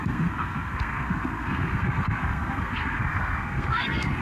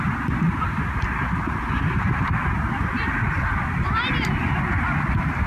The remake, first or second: first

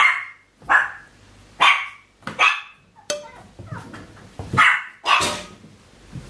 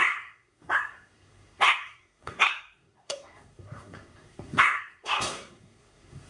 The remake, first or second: second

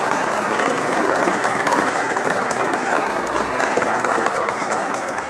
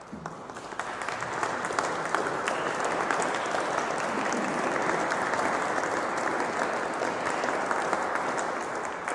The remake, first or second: first